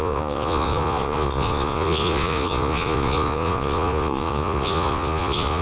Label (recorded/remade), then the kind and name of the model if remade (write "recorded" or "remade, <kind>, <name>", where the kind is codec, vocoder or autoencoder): remade, vocoder, Vocos